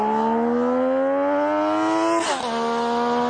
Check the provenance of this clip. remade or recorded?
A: recorded